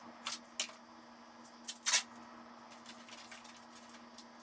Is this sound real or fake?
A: real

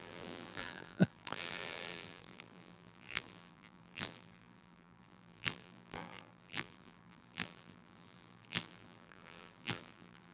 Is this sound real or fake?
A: fake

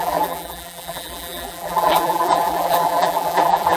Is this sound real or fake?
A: fake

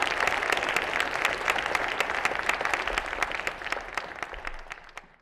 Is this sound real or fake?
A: real